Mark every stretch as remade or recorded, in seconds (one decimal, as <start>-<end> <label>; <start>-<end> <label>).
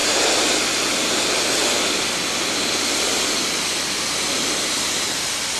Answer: 0.0-1.6 recorded; 1.6-5.6 remade